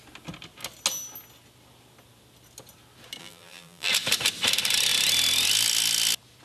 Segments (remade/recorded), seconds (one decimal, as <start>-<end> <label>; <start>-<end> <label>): 0.0-3.2 recorded; 3.2-3.9 remade; 3.9-6.4 recorded